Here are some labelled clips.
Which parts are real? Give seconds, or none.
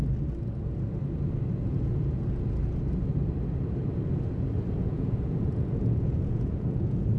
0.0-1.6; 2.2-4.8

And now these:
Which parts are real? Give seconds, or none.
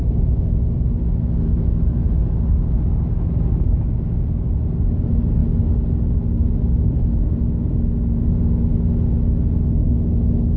0.0-10.6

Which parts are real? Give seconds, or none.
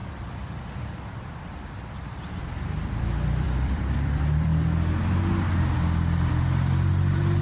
4.5-6.3